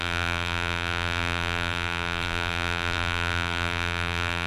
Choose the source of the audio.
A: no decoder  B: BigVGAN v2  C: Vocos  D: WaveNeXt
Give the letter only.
B